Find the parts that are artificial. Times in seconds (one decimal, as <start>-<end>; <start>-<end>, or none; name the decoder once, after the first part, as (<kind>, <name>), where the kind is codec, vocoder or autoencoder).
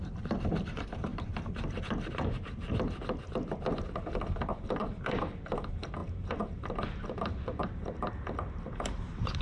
0.0-1.1 (vocoder, BigVGAN v2); 4.6-9.4